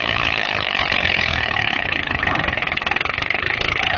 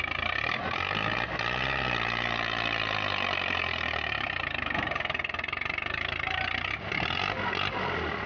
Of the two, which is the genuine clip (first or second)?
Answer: second